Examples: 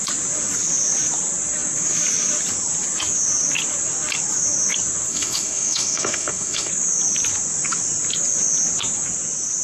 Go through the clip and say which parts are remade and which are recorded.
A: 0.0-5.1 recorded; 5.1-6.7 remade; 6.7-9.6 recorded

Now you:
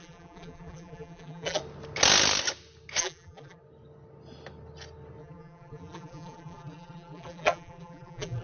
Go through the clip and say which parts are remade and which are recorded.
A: 0.0-1.6 remade; 1.6-3.0 recorded; 3.0-3.6 remade; 3.6-5.2 recorded; 5.2-8.4 remade

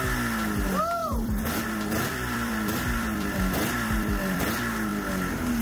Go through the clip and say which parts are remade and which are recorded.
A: 0.0-1.0 recorded; 1.0-4.4 remade; 4.4-5.6 recorded

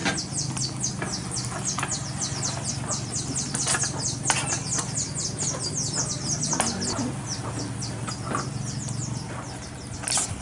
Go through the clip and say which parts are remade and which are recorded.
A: 0.0-10.4 recorded

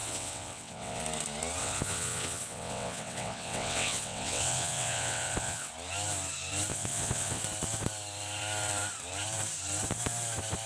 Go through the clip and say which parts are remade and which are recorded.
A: 0.0-1.0 remade; 1.0-1.6 recorded; 1.6-5.7 remade; 5.7-6.7 recorded; 6.7-7.4 remade; 7.4-10.7 recorded